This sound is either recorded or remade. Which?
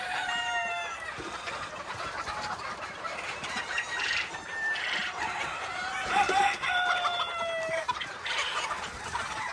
remade